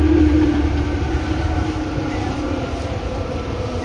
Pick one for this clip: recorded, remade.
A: remade